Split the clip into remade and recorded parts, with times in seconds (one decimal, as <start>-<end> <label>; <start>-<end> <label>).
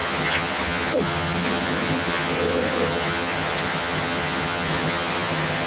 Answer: 0.0-5.7 remade